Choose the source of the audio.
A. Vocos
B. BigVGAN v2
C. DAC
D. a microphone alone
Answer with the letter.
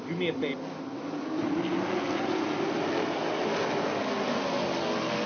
D